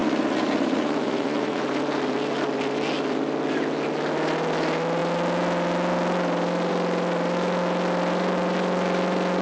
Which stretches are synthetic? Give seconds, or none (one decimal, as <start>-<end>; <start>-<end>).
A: 0.0-1.6